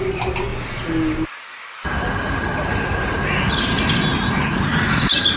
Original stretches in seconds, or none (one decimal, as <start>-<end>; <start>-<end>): 0.0-5.4